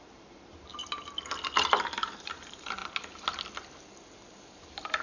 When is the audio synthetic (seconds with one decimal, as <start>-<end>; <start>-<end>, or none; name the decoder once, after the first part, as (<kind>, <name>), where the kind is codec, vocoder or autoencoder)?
0.0-0.7 (vocoder, BigVGAN v2); 1.8-2.8; 4.6-5.0